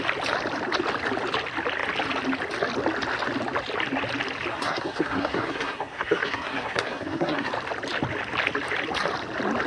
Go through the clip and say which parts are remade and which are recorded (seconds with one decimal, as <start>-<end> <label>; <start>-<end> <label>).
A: 0.0-4.5 recorded; 4.5-7.5 remade; 7.5-9.7 recorded